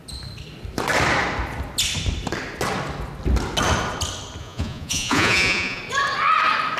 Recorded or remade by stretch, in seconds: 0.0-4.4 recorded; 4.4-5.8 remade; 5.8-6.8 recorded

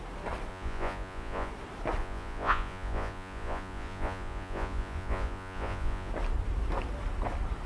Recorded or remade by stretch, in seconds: 0.0-0.5 recorded; 0.5-1.5 remade; 1.5-2.0 recorded; 2.0-6.1 remade; 6.1-7.7 recorded